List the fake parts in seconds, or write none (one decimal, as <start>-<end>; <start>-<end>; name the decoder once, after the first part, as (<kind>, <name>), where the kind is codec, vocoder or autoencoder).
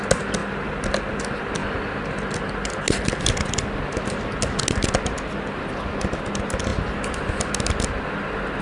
none